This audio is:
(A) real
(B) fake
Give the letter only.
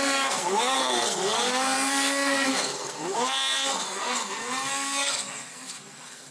B